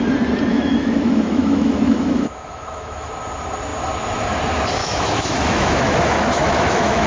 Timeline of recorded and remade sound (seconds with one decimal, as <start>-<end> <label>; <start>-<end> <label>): 0.0-0.5 recorded; 0.5-3.1 remade; 3.1-4.8 recorded; 4.8-7.1 remade